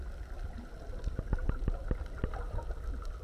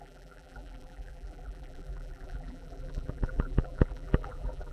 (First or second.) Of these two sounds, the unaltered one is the first